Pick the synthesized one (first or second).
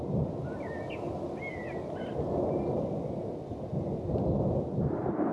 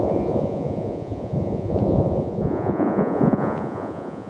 second